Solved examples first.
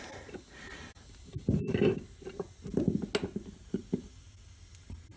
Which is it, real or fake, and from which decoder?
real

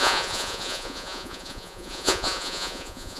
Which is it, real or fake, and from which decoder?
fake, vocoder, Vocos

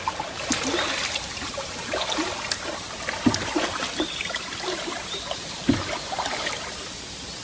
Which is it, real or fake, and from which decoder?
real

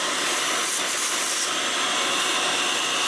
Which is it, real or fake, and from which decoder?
real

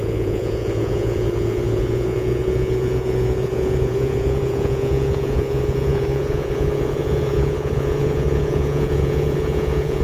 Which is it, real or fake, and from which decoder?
fake, vocoder, Vocos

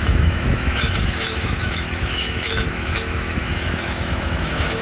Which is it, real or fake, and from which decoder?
fake, autoencoder, DAC-VAE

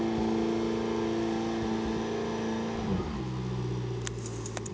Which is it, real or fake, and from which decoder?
real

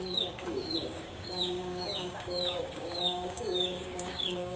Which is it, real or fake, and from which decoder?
fake, codec, DAC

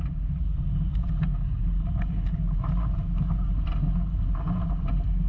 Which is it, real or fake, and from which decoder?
real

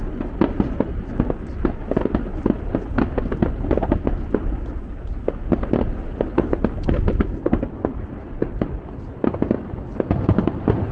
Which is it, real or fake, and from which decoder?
real